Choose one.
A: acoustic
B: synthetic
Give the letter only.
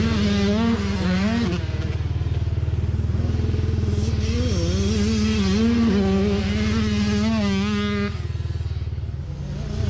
A